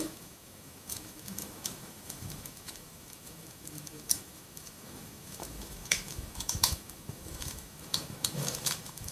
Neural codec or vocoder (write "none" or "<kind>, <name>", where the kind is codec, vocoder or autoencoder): autoencoder, DAC-VAE